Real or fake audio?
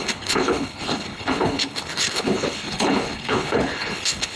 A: fake